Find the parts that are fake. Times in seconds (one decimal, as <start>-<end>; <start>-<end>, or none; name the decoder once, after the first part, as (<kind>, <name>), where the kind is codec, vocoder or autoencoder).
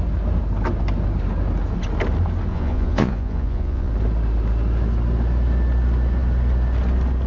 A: 2.5-3.9 (vocoder, Vocos)